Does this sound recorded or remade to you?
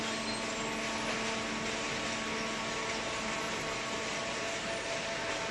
recorded